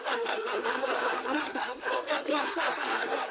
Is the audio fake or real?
fake